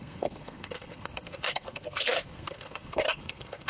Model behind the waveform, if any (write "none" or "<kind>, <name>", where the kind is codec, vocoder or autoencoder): codec, SNAC